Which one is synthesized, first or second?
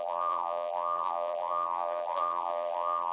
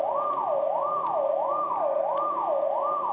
first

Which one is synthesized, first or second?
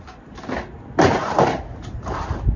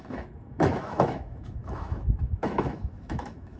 second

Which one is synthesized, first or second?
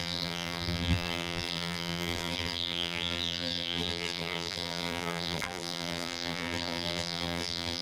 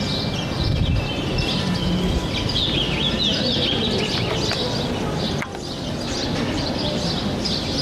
first